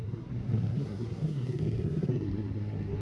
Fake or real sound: fake